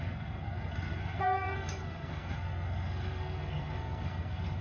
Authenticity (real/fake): fake